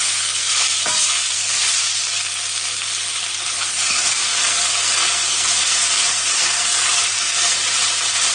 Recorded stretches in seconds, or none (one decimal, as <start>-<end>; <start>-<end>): 1.6-3.6; 7.6-8.3